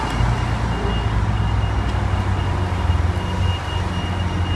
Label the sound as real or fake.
real